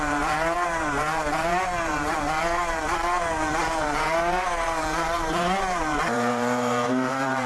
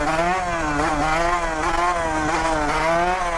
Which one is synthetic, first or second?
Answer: first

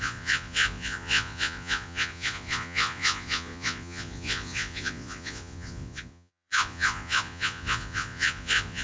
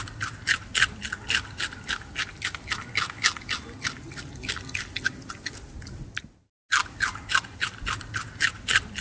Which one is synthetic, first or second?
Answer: first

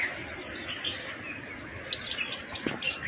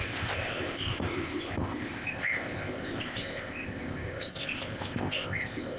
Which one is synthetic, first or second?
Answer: second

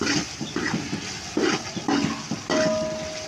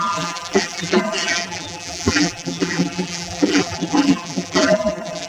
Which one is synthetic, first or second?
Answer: second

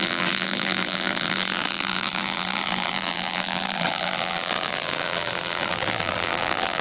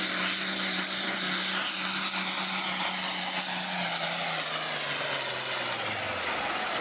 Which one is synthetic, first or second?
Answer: first